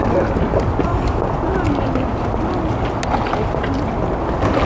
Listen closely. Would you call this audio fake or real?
real